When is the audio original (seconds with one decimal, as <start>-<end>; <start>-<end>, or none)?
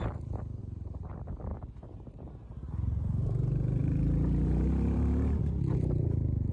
0.0-0.6; 1.1-1.5; 5.4-6.5